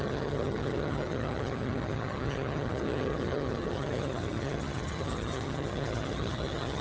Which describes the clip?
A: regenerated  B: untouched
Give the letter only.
A